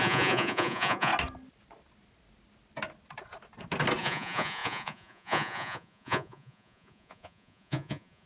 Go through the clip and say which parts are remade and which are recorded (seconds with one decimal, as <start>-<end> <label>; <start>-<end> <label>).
0.0-1.1 remade; 1.1-4.0 recorded; 4.0-8.3 remade